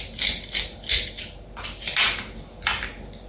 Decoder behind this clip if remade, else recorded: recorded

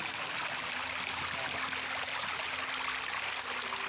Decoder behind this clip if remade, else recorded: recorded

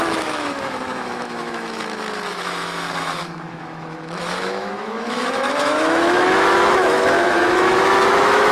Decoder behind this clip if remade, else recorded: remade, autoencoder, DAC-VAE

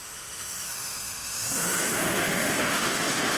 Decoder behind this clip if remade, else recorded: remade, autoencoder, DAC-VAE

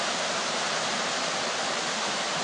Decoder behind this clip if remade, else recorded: recorded